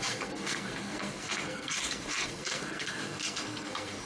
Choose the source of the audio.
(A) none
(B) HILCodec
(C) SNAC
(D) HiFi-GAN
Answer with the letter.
C